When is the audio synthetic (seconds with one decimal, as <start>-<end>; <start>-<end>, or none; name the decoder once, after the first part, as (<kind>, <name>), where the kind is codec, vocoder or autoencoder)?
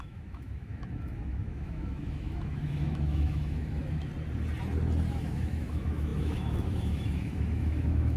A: 0.0-4.1 (autoencoder, DAC-VAE); 5.1-8.2